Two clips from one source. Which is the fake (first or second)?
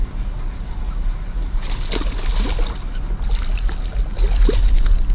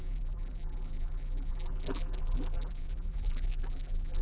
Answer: second